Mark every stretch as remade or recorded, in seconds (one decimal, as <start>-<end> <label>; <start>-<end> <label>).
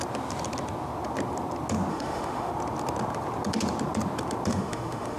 0.0-1.9 recorded; 1.9-2.5 remade; 2.5-4.5 recorded; 4.5-5.2 remade